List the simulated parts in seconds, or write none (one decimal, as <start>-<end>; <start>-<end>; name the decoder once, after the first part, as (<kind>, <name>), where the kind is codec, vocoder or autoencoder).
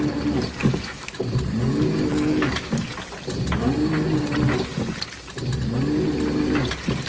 0.6-1.2 (autoencoder, DAC-VAE); 2.1-2.7